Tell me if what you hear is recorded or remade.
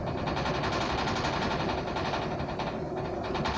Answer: recorded